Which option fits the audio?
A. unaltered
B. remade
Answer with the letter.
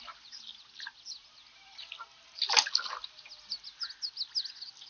A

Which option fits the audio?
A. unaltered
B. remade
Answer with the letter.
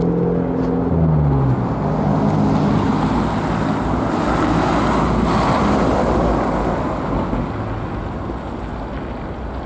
A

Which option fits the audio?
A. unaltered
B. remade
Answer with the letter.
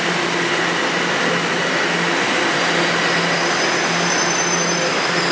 A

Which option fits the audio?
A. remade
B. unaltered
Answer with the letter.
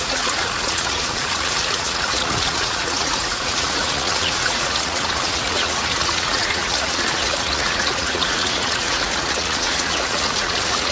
A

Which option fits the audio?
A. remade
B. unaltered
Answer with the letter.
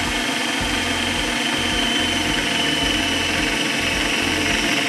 B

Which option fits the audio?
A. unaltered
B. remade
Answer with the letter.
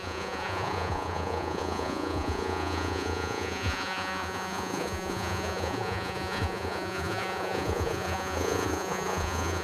B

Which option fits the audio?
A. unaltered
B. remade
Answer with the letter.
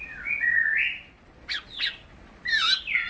A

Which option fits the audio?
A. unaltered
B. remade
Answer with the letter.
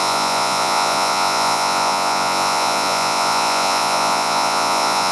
B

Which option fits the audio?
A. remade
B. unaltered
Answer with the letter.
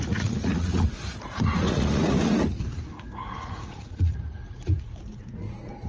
A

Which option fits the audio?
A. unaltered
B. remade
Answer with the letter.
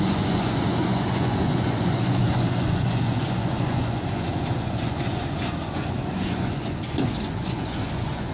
B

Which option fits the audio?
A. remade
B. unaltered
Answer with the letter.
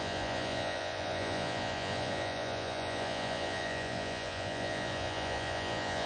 A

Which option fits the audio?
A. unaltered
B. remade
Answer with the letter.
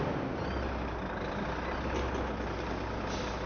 A